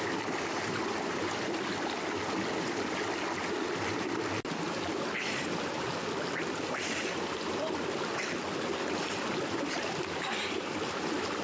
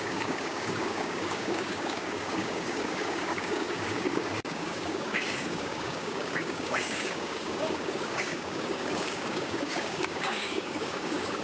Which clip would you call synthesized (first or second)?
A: second